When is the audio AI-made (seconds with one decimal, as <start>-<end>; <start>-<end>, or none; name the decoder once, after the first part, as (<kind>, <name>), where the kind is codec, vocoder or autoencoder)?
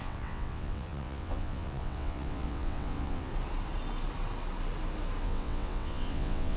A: 0.0-3.3 (vocoder, WaveNeXt); 5.2-6.6